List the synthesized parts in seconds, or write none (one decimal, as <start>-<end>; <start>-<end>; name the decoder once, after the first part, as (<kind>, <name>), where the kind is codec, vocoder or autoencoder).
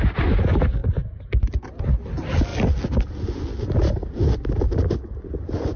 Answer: none